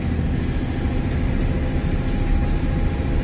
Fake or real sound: real